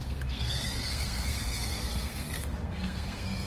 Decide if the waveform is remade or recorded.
remade